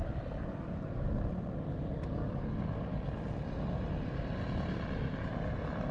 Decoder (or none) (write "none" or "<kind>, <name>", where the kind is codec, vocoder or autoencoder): none